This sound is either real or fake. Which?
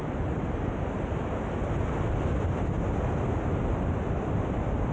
real